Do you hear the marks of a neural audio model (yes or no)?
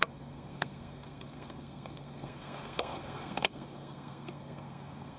yes